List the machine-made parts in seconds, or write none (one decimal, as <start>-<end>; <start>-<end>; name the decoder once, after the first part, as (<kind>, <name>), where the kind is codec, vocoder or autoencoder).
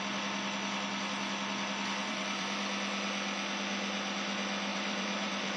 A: 2.1-2.6 (vocoder, BigVGAN v2); 4.7-5.6